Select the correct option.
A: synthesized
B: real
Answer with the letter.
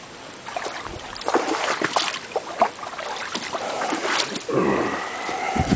A